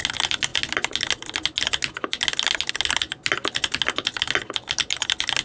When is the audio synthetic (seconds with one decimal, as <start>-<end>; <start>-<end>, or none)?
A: none